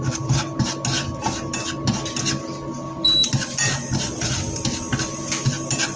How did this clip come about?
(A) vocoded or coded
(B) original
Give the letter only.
B